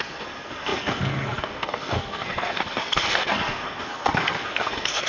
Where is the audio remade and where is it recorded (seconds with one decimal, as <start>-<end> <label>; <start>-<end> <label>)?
0.0-5.1 remade